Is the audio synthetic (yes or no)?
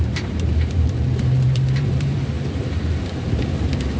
yes